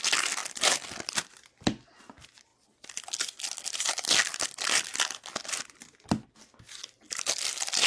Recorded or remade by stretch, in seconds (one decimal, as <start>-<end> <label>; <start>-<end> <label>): 0.0-7.9 recorded